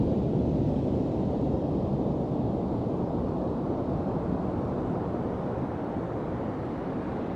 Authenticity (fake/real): fake